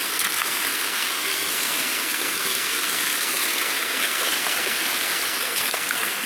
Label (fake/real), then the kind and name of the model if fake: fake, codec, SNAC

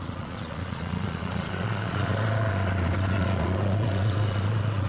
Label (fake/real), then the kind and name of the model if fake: fake, vocoder, Vocos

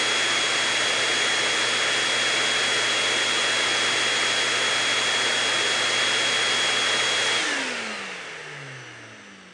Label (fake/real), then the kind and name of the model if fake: real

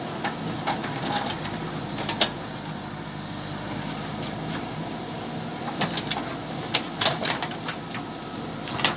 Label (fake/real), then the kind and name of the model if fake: real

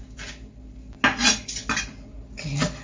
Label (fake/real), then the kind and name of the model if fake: real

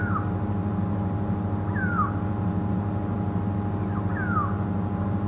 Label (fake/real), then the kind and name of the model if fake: real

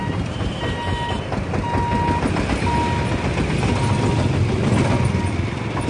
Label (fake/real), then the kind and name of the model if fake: real